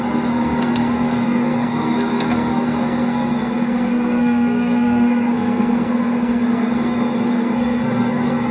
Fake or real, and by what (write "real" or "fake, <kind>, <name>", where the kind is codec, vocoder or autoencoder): fake, codec, SNAC